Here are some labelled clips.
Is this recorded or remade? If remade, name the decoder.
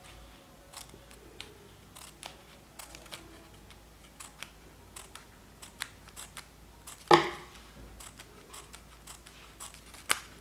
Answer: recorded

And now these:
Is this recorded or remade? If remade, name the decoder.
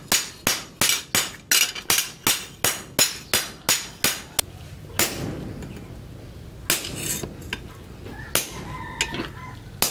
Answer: recorded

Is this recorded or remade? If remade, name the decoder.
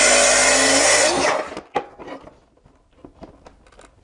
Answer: recorded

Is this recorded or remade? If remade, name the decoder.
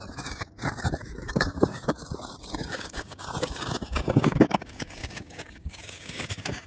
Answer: remade, codec, DAC